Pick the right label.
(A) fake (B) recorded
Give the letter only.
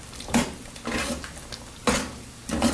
B